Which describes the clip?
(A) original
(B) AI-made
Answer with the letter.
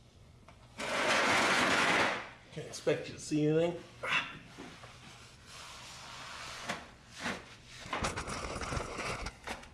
B